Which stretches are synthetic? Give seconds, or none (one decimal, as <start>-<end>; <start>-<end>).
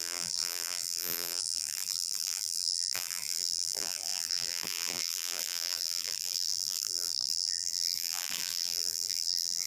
0.0-9.7